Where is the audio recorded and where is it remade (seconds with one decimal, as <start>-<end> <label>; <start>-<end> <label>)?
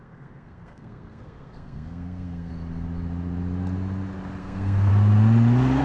0.0-2.5 remade; 2.5-4.4 recorded; 4.4-4.9 remade; 4.9-5.8 recorded